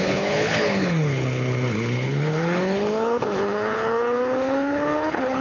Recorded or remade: remade